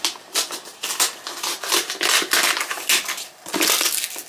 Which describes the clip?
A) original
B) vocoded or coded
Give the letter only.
A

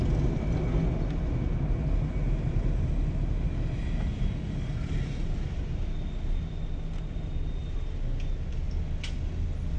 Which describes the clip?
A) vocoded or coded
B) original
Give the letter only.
B